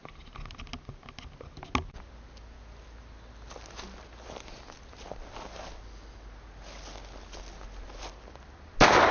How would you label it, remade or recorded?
recorded